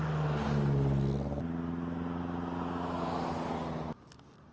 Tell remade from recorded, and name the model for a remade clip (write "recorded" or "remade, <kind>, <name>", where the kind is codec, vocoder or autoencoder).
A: recorded